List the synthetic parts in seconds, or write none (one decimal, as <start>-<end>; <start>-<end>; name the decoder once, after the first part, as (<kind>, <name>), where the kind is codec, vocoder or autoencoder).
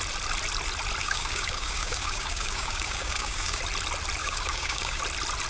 1.0-3.6 (codec, DAC); 4.2-5.0